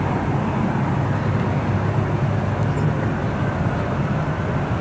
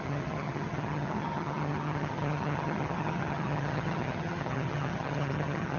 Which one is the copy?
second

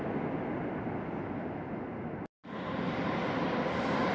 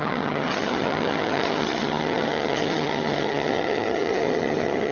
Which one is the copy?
second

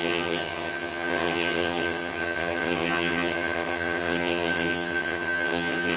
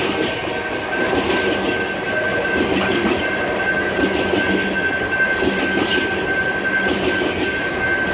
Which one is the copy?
first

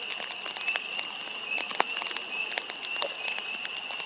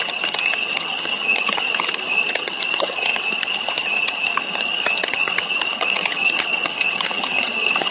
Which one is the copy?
second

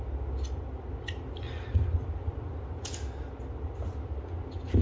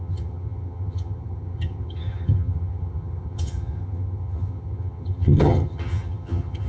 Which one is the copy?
second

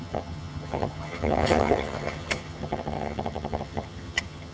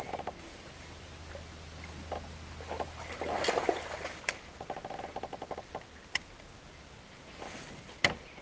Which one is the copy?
first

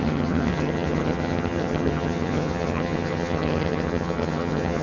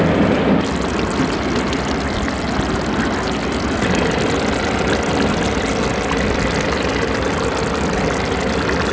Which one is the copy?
first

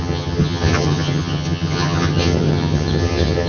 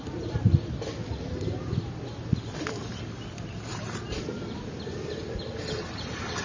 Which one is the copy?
first